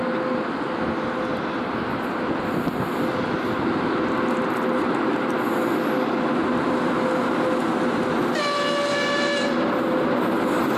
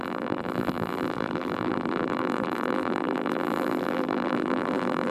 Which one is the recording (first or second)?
first